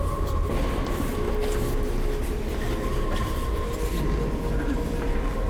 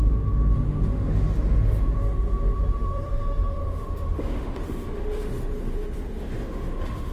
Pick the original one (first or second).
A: first